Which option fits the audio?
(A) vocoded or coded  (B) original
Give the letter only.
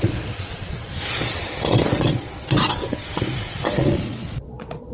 A